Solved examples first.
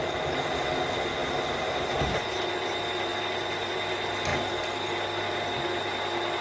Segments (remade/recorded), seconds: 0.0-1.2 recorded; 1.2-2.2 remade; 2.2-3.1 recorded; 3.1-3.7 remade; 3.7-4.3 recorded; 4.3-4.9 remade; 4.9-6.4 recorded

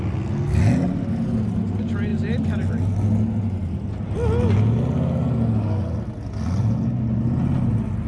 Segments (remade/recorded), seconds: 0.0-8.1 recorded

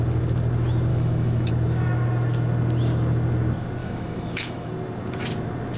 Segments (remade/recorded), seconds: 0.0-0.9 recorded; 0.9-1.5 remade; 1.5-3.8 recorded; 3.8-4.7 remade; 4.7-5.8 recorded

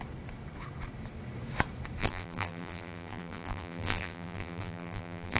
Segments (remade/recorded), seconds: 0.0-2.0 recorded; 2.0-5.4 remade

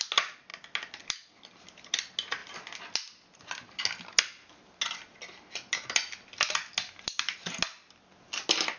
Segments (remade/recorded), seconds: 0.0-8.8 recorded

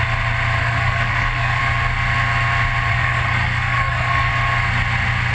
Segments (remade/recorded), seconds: 0.0-0.6 recorded; 0.6-1.6 remade; 1.6-2.9 recorded; 2.9-4.3 remade; 4.3-5.3 recorded